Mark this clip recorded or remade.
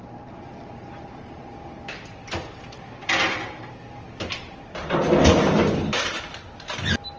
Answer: recorded